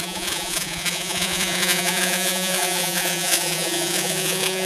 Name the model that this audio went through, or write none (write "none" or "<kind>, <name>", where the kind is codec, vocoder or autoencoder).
vocoder, Vocos